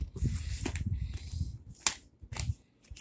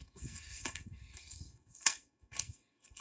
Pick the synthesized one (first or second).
second